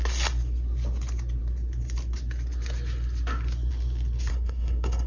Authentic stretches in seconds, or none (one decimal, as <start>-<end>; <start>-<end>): 0.0-4.3